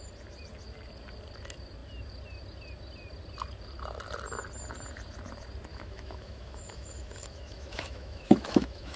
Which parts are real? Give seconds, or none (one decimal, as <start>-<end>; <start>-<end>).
0.0-5.7